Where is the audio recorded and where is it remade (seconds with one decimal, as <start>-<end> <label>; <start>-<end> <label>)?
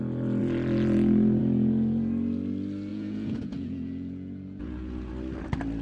0.0-2.9 recorded; 2.9-5.1 remade; 5.1-5.8 recorded